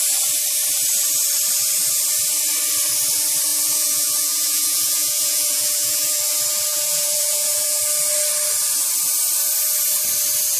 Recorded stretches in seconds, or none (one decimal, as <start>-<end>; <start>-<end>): 0.0-3.5; 6.2-6.7; 7.8-10.6